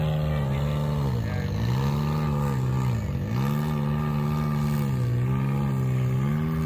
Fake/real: real